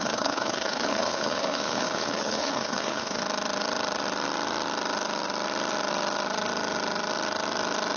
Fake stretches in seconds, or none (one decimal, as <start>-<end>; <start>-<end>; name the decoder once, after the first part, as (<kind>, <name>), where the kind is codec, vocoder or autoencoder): 0.0-3.2 (codec, HILCodec)